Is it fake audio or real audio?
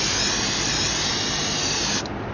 real